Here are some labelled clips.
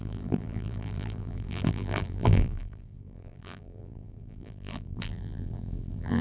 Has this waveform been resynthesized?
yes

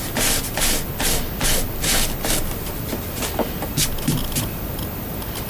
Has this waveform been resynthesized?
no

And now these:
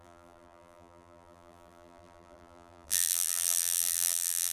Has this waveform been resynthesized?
yes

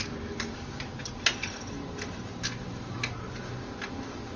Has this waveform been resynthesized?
no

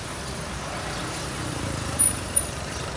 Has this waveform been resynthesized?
yes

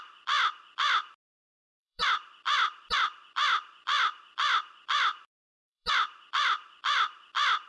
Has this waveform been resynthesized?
yes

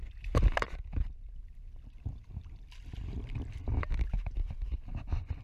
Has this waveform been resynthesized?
yes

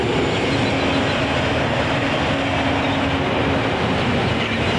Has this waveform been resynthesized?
no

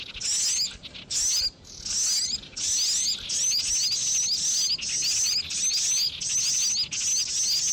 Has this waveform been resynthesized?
no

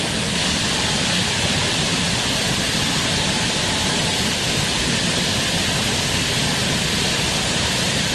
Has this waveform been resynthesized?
no